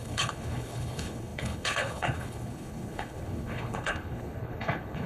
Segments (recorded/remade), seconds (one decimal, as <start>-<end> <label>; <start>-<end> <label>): 0.0-5.1 remade